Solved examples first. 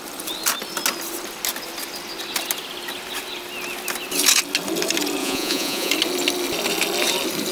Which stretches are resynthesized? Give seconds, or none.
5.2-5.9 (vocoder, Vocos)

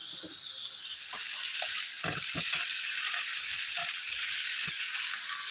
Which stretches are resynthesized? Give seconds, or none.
none